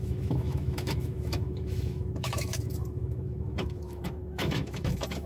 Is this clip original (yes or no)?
no